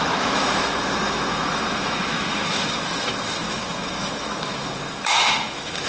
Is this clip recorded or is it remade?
remade